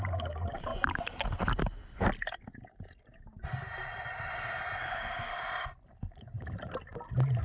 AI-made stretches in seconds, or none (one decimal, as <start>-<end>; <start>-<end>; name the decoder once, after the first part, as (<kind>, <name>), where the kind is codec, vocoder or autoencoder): 0.0-0.7 (codec, DAC); 4.8-5.3